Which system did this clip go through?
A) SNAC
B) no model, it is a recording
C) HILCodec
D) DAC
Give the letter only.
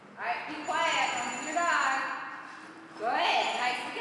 B